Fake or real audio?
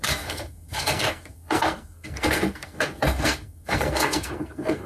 fake